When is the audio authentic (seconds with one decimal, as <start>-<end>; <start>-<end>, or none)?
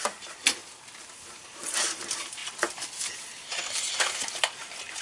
0.6-1.1; 2.4-3.1